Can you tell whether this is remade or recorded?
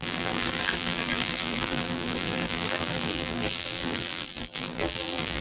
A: remade